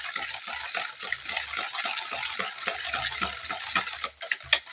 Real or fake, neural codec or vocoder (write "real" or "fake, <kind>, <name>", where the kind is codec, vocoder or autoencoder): real